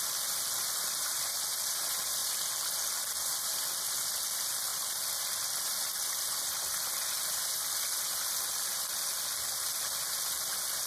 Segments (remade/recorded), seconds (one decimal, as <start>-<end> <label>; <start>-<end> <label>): 0.0-10.9 recorded